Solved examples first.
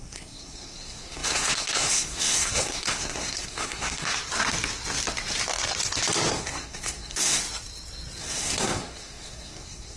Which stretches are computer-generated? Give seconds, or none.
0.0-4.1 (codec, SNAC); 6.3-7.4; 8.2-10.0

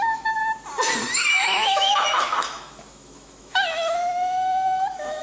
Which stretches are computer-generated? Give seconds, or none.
0.0-0.4 (autoencoder, DAC-VAE); 1.3-5.2

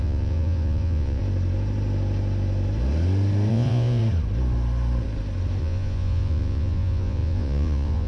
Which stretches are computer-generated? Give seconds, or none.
0.0-1.2 (vocoder, Vocos); 3.5-4.0; 5.6-8.1